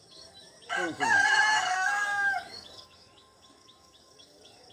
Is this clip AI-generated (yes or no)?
yes